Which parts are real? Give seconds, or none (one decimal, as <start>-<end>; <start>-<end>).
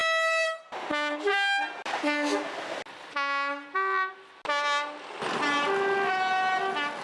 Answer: 0.0-7.0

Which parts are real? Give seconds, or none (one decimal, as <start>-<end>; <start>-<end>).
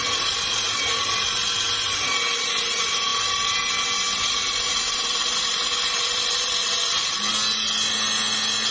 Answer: 0.0-8.7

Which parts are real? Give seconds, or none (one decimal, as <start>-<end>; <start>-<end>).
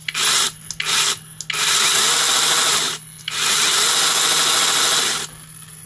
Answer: 0.0-5.9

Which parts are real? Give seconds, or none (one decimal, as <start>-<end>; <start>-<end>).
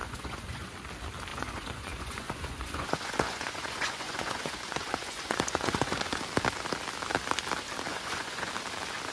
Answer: 0.7-1.3; 6.2-7.9; 8.5-9.1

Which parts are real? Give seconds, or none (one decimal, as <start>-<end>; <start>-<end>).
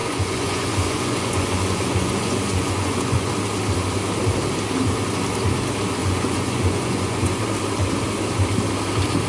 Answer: 3.3-6.0; 7.4-9.3